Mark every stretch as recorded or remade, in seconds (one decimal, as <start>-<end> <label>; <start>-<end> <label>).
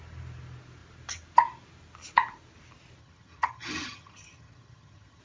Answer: 0.0-3.0 recorded; 3.0-5.2 remade